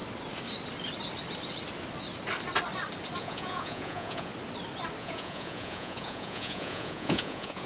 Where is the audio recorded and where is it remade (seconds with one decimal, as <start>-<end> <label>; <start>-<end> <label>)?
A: 0.0-3.2 recorded; 3.2-4.3 remade; 4.3-5.0 recorded; 5.0-7.7 remade